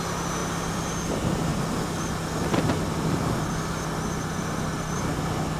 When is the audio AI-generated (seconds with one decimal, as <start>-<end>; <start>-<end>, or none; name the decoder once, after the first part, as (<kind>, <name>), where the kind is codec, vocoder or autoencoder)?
none